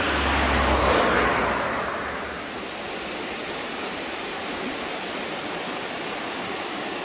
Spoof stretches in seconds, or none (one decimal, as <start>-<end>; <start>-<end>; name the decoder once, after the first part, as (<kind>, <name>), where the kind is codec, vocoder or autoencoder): 2.0-6.2 (vocoder, BigVGAN v2)